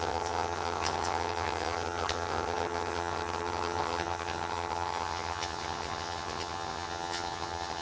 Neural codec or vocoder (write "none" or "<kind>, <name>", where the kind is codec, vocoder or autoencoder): vocoder, HiFi-GAN